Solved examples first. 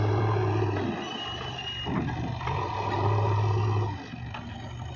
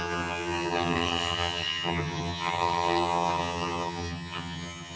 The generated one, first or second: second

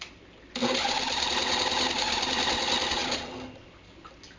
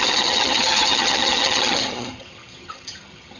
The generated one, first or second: second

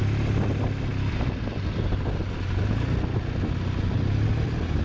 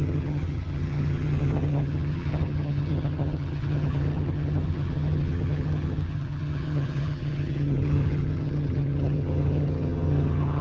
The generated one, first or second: second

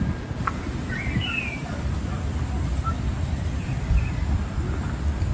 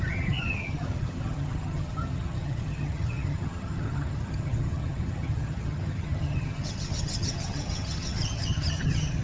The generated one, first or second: second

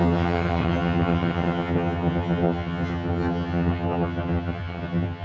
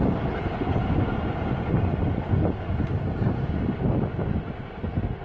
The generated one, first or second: first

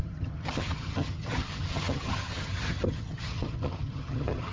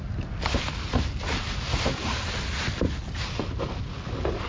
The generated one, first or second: first